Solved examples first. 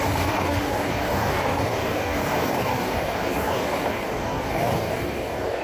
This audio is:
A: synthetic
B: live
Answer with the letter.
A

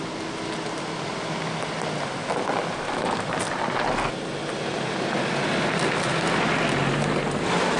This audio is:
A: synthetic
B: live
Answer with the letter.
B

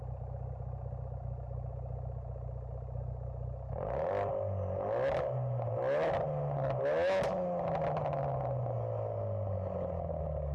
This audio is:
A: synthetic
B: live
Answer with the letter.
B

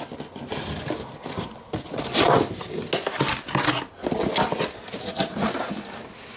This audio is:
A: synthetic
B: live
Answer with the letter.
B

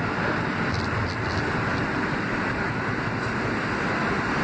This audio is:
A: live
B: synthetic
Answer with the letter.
A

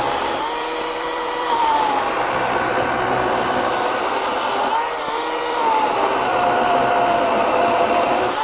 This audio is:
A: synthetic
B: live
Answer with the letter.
A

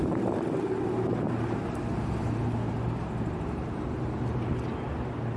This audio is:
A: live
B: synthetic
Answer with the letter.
A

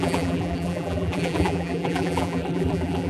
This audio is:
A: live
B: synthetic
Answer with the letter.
B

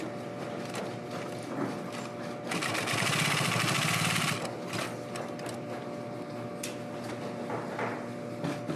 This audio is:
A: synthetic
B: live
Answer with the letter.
B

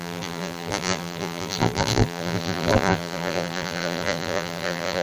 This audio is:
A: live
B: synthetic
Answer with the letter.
B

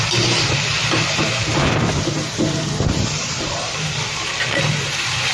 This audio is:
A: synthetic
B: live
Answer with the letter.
A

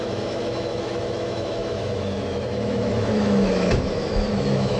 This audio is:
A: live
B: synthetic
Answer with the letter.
B